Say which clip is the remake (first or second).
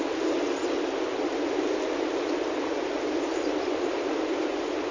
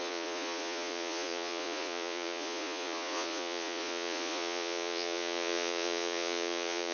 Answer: second